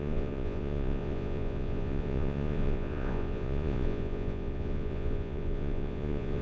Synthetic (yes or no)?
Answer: yes